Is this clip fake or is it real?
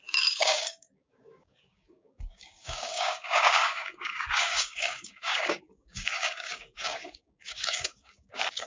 fake